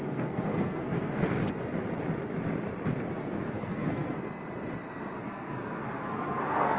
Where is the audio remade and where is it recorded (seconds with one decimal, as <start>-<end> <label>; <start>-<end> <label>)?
0.0-1.1 remade; 1.1-3.2 recorded; 3.2-4.2 remade; 4.2-5.2 recorded; 5.2-6.8 remade